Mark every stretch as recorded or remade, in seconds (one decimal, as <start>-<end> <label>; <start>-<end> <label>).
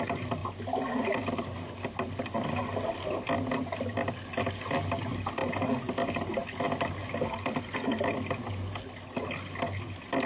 0.0-10.3 recorded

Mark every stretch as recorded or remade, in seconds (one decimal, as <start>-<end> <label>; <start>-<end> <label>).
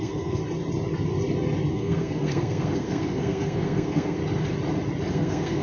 0.0-0.4 remade; 0.4-1.7 recorded; 1.7-4.2 remade; 4.2-5.1 recorded; 5.1-5.6 remade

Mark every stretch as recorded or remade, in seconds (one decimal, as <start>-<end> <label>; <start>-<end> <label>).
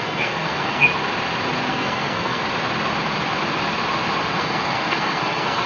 0.0-0.9 remade; 0.9-1.7 recorded; 1.7-2.4 remade; 2.4-4.3 recorded; 4.3-5.7 remade